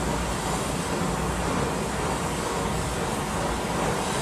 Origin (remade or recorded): recorded